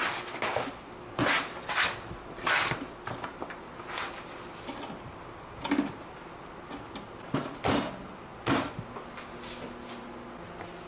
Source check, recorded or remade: recorded